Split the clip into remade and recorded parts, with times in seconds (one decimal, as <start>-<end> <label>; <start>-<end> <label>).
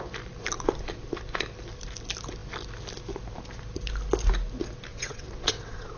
0.0-4.9 recorded; 4.9-6.0 remade